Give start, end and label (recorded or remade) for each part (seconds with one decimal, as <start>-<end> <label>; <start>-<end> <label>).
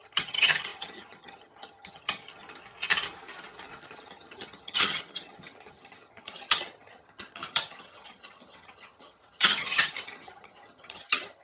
0.0-2.4 remade; 2.4-3.8 recorded; 3.8-11.4 remade